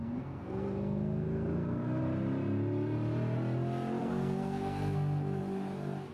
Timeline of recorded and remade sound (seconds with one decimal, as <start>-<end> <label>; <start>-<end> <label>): 0.0-2.0 remade; 2.0-4.0 recorded; 4.0-5.4 remade; 5.4-6.1 recorded